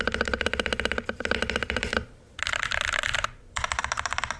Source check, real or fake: fake